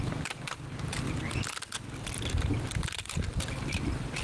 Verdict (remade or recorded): recorded